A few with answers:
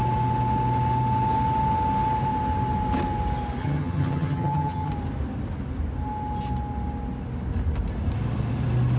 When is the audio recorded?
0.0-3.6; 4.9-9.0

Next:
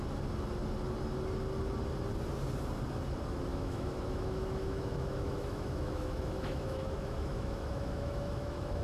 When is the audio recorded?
0.0-3.5